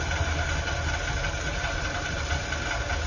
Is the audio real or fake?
real